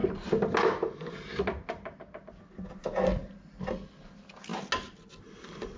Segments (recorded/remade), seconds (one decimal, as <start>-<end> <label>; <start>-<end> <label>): 0.0-5.8 recorded

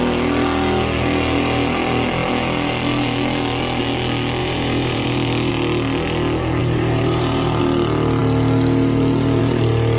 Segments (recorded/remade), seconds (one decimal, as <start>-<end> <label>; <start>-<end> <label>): 0.0-4.4 recorded; 4.4-5.5 remade; 5.5-6.6 recorded; 6.6-7.6 remade; 7.6-10.0 recorded

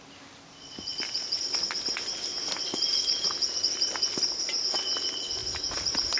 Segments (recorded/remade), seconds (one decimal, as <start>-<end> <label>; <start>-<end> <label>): 0.0-6.2 recorded

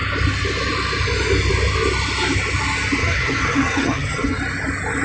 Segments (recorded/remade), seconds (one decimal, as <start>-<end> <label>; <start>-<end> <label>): 0.0-3.0 recorded; 3.0-4.4 remade; 4.4-5.0 recorded

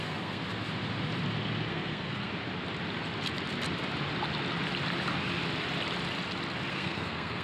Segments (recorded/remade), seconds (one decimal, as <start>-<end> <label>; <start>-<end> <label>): 0.0-0.4 remade; 0.4-1.7 recorded; 1.7-2.3 remade; 2.3-6.7 recorded; 6.7-7.4 remade

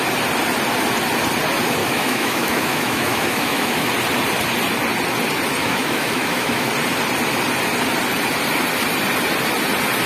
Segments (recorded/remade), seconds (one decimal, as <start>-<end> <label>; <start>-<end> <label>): 0.0-1.8 recorded; 1.8-3.9 remade; 3.9-5.6 recorded; 5.6-6.7 remade; 6.7-10.1 recorded

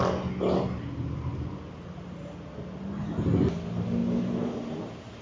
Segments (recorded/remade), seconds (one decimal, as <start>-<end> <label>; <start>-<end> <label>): 0.0-5.2 recorded

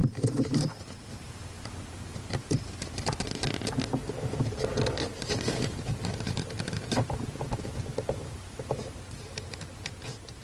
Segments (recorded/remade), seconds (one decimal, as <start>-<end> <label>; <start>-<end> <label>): 0.0-3.1 remade; 3.1-5.1 recorded; 5.1-7.8 remade; 7.8-8.2 recorded; 8.2-10.4 remade